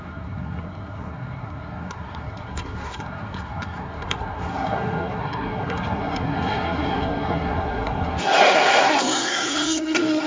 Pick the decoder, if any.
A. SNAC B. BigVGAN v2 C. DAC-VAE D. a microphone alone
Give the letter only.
A